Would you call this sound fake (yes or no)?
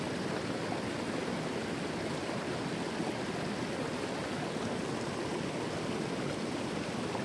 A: no